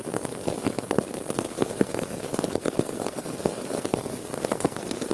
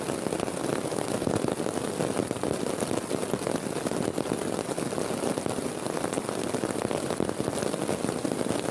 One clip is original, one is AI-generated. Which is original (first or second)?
second